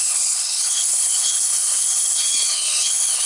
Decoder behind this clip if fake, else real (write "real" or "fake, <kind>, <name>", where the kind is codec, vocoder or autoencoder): fake, codec, HILCodec